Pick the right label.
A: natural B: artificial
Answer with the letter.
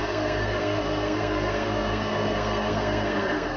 B